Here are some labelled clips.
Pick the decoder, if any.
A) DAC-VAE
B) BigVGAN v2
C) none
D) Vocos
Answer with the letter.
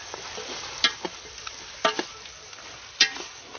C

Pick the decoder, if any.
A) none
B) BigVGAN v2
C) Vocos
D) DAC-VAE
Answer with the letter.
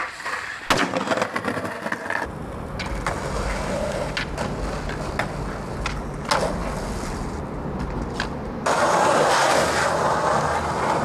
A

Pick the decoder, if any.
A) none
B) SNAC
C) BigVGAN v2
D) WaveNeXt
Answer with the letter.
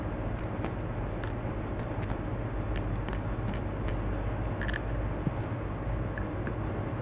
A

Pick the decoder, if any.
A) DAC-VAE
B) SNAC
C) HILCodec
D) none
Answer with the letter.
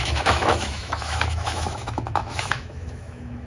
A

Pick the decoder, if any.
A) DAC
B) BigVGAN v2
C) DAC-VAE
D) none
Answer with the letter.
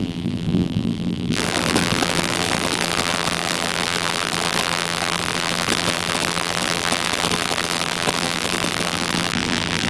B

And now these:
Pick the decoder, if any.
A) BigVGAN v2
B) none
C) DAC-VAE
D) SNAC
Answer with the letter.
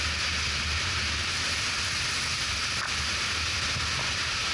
B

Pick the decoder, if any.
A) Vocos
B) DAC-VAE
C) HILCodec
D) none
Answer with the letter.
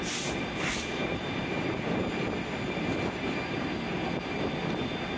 D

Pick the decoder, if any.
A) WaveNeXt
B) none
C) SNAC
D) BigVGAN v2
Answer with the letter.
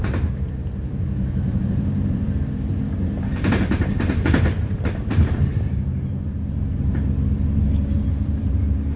D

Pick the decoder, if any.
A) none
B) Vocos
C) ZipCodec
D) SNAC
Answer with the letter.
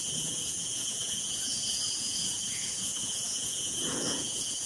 B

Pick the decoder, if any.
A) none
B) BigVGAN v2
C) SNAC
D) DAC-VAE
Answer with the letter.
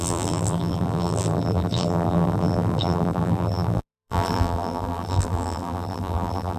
B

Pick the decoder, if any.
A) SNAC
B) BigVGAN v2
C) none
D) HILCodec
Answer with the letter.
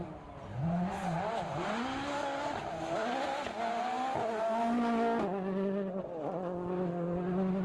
C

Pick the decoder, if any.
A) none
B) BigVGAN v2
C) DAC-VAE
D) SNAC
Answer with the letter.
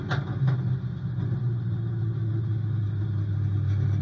A